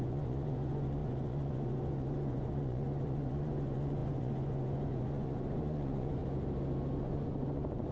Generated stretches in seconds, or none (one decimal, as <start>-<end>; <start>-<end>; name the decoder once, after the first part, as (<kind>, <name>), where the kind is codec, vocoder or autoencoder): 0.0-6.2 (vocoder, Vocos); 7.0-7.9